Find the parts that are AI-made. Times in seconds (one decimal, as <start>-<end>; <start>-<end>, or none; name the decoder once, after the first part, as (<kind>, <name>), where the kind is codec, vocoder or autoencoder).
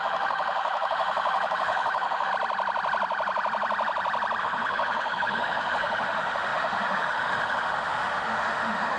0.0-2.3 (autoencoder, DAC-VAE); 4.4-9.0